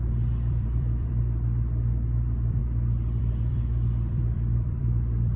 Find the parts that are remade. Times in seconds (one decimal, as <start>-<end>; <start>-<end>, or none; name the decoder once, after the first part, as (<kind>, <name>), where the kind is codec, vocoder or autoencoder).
0.0-5.4 (vocoder, BigVGAN v2)